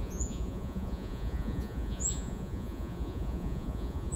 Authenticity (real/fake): fake